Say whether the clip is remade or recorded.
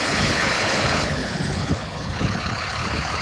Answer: remade